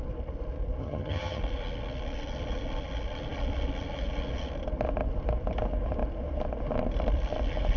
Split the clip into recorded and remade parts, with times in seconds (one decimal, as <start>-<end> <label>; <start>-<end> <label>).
0.0-0.8 recorded; 0.8-1.4 remade; 1.4-7.8 recorded